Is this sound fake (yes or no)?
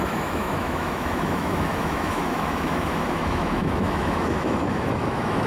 yes